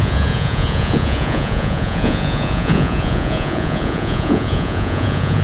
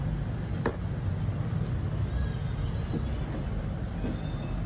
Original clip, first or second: second